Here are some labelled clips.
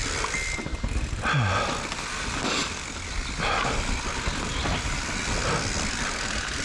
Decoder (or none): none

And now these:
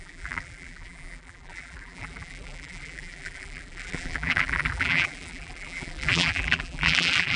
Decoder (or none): vocoder, BigVGAN v2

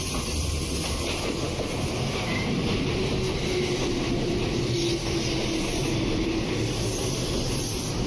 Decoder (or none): none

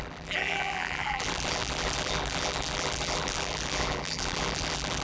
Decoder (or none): vocoder, BigVGAN v2